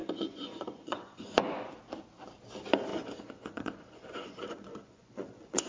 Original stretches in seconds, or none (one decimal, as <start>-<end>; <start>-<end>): 1.7-2.9